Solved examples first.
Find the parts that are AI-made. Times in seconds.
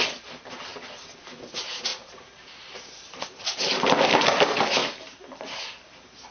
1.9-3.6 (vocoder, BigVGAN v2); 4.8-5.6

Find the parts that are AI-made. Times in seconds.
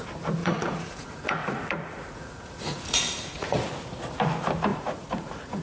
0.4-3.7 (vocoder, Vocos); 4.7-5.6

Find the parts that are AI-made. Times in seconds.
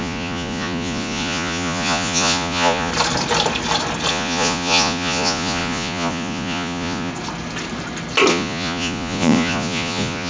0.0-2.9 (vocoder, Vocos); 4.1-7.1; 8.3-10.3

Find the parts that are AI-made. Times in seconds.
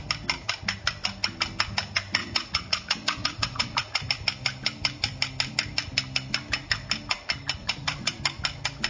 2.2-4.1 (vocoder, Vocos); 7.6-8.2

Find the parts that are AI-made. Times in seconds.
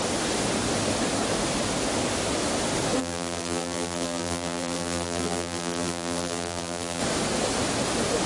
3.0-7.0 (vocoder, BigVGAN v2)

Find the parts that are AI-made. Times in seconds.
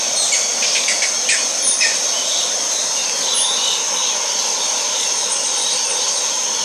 none